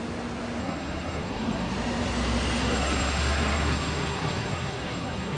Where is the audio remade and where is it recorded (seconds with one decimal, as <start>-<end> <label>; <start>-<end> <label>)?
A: 0.0-0.6 recorded; 0.6-1.7 remade; 1.7-2.6 recorded; 2.6-5.4 remade